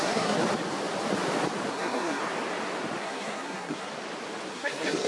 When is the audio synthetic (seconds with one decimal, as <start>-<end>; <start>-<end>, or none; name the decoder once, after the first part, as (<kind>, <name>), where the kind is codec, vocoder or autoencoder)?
0.0-0.4 (codec, SNAC); 1.7-2.2; 3.0-3.9; 4.5-5.1